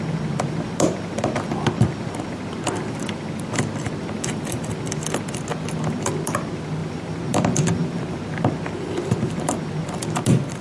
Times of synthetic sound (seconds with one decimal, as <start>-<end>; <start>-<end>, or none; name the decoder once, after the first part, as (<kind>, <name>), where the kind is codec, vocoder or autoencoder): none